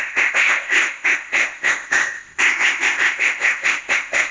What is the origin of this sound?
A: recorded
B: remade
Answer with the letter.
B